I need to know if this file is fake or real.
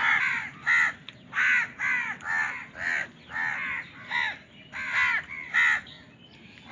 real